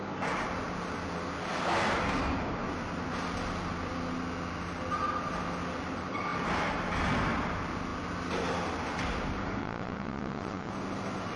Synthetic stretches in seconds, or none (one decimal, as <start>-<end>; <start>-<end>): 9.6-10.7